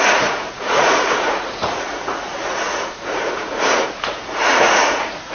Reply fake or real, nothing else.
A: fake